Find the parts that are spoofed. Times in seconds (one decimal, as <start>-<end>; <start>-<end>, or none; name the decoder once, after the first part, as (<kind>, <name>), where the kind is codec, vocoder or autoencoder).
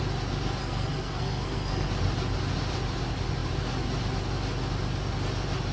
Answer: 0.6-1.9 (codec, SNAC)